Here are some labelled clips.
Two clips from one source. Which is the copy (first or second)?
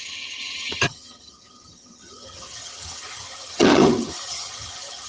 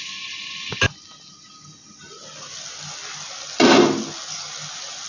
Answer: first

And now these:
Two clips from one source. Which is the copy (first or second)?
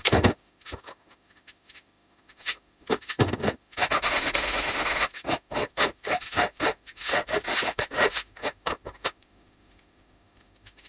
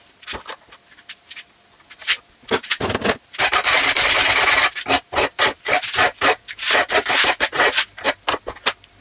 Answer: first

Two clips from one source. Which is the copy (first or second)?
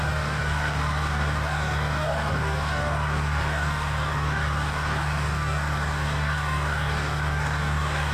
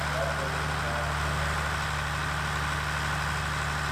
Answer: first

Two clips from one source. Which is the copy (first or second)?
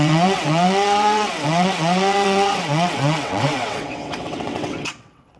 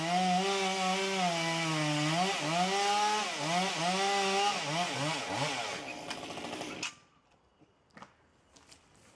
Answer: first